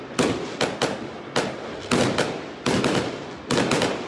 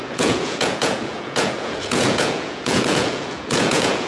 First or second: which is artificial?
second